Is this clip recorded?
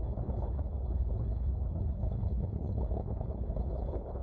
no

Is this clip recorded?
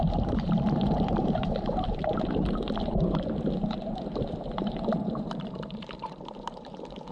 no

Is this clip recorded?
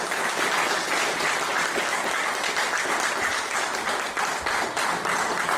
yes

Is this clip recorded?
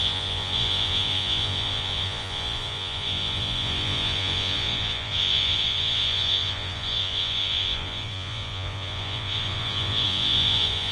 no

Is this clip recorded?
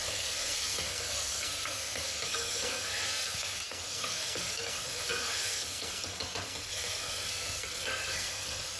no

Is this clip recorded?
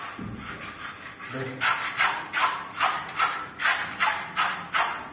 yes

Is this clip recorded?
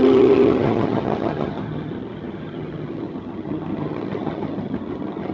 no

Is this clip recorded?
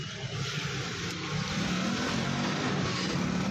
yes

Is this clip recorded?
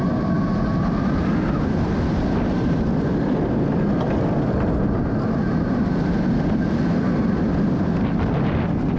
yes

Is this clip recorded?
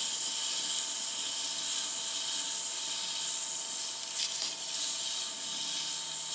yes